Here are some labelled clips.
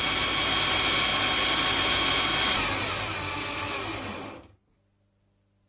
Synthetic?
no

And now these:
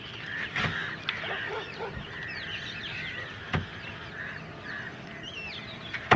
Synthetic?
no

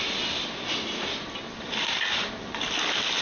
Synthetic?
no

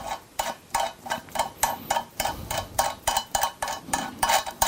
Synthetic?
yes